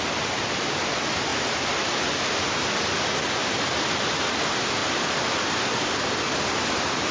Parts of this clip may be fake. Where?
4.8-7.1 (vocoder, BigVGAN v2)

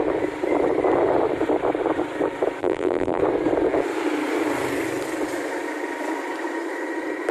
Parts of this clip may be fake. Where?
2.6-3.2 (vocoder, BigVGAN v2)

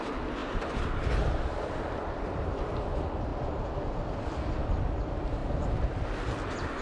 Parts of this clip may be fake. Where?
0.4-2.4 (vocoder, BigVGAN v2); 3.3-4.6

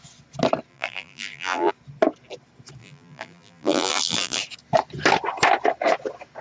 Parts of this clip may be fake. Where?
0.7-1.7 (vocoder, BigVGAN v2); 2.8-4.4

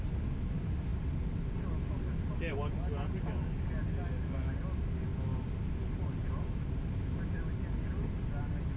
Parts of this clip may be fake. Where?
none

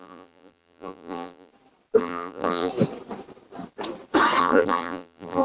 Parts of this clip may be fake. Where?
0.0-1.5 (vocoder, BigVGAN v2); 2.0-2.7; 4.4-5.4

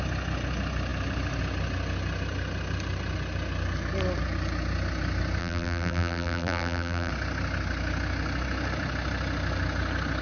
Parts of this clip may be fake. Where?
5.4-7.1 (vocoder, BigVGAN v2)

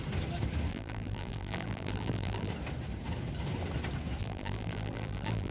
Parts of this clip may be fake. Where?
0.7-2.5 (vocoder, BigVGAN v2); 4.2-5.5